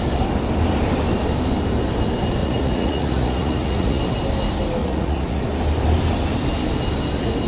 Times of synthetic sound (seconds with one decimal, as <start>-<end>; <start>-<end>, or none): 2.4-4.0; 4.8-5.4